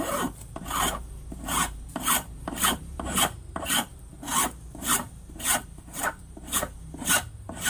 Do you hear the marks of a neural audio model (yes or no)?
yes